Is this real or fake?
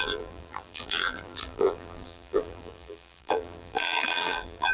fake